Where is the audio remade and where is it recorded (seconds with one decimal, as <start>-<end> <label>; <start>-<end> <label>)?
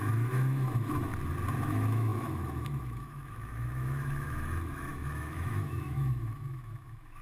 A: 0.0-1.1 remade; 1.1-1.6 recorded; 1.6-7.2 remade